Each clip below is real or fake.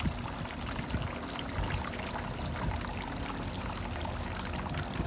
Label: real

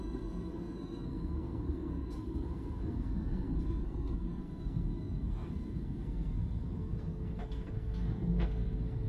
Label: fake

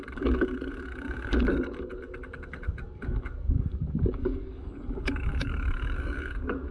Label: fake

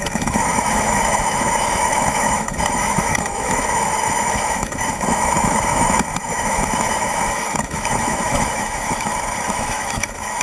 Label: fake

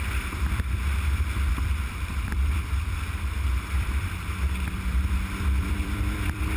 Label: fake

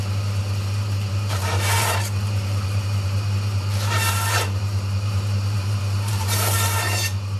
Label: fake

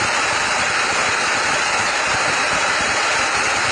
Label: real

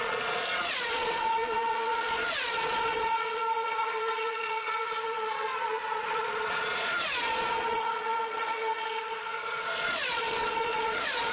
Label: fake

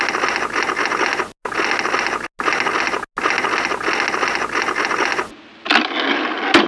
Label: real